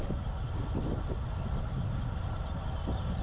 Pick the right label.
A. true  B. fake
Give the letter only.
A